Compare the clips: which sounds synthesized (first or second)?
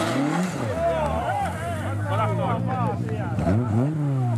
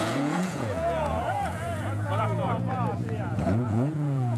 second